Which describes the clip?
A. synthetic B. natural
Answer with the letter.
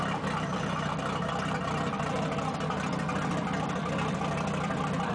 B